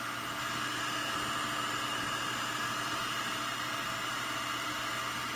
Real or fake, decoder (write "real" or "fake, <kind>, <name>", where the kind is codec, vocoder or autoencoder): real